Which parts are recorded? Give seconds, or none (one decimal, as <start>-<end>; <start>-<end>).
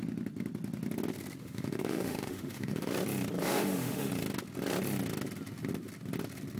0.0-1.4; 2.9-3.4; 4.1-6.6